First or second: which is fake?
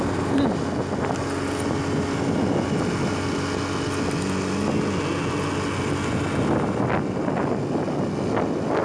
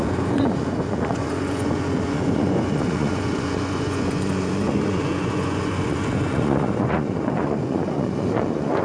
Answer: second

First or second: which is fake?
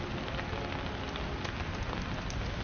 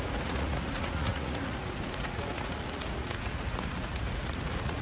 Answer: second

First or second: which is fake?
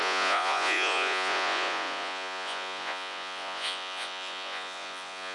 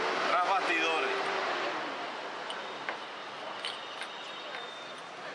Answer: first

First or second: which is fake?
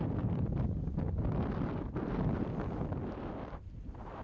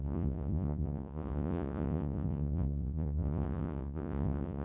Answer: second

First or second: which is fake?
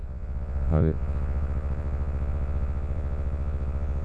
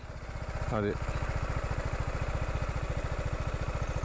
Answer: first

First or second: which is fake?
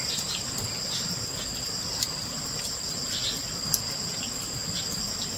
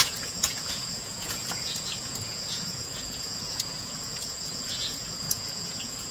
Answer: second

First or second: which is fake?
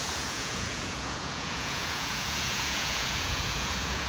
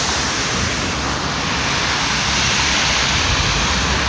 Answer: first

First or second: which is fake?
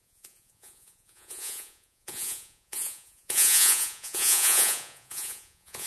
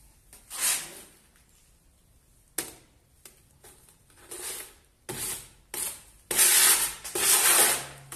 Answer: first